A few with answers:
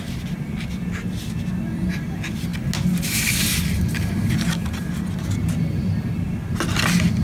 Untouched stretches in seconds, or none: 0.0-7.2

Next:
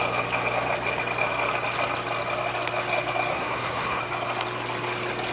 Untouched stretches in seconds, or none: 0.0-3.3; 4.0-5.3

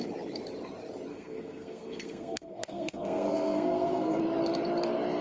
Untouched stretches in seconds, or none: 0.0-1.1; 4.2-5.2

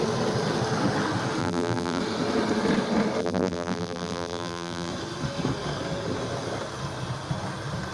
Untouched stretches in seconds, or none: 0.0-1.4; 2.0-3.2; 4.9-7.9

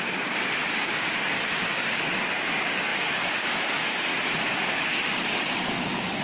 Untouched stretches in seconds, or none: 4.1-4.7